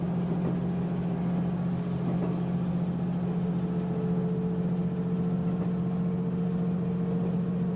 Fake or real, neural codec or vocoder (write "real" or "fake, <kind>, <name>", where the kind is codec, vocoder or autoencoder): real